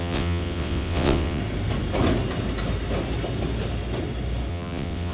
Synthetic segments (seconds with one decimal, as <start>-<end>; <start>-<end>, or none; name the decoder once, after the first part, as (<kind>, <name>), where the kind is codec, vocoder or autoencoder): 0.0-1.4 (vocoder, WaveNeXt); 4.5-5.1